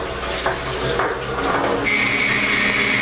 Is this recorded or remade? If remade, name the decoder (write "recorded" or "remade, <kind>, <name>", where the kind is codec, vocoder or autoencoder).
recorded